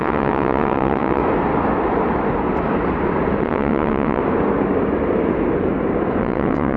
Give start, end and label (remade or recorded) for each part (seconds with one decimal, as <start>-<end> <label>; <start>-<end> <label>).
0.0-1.2 remade; 1.2-3.4 recorded; 3.4-4.2 remade; 4.2-6.2 recorded; 6.2-6.8 remade